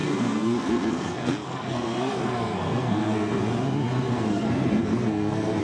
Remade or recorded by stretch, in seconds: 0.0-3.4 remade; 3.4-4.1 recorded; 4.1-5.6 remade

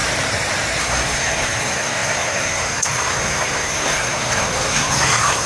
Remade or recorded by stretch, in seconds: 0.0-0.8 recorded; 0.8-5.5 remade

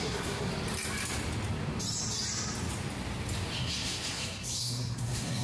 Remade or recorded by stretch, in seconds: 0.0-0.5 remade; 0.5-3.6 recorded; 3.6-5.4 remade

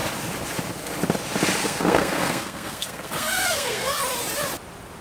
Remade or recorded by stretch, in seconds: 0.0-1.6 recorded; 1.6-4.0 remade; 4.0-5.0 recorded

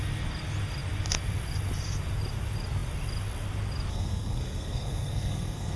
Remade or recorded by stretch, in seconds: 0.0-3.9 recorded; 3.9-5.8 remade

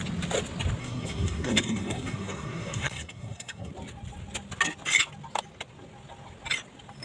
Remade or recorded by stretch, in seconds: 0.0-0.8 recorded; 0.8-3.7 remade; 3.7-7.0 recorded